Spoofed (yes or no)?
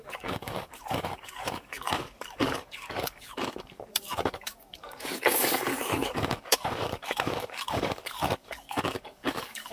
yes